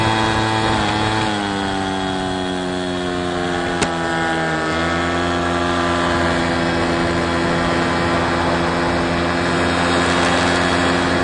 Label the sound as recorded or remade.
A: recorded